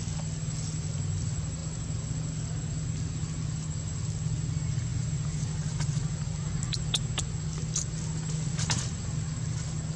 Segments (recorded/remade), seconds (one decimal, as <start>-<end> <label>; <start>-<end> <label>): 0.0-10.0 recorded